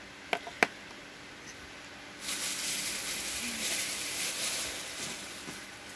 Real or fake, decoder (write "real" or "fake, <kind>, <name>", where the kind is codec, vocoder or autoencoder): real